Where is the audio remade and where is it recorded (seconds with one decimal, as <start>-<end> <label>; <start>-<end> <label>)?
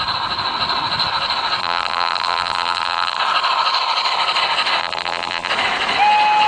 0.0-1.6 recorded; 1.6-3.2 remade; 3.2-4.8 recorded; 4.8-5.5 remade; 5.5-6.5 recorded